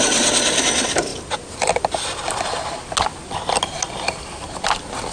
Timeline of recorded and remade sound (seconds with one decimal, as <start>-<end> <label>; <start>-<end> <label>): 0.0-5.1 recorded